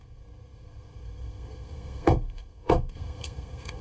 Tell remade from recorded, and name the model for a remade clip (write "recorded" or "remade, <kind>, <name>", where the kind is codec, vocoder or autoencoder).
remade, codec, SNAC